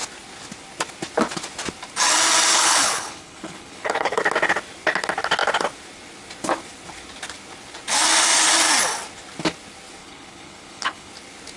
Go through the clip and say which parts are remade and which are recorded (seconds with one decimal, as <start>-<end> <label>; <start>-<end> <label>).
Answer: 0.0-2.5 recorded; 2.5-4.2 remade; 4.2-10.0 recorded; 10.0-11.1 remade; 11.1-11.6 recorded